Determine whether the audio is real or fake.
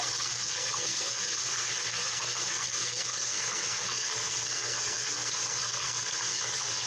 fake